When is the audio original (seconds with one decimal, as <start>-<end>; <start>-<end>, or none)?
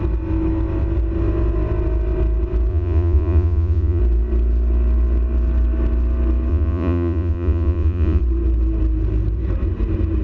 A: 0.0-2.7; 4.0-6.5; 8.2-10.2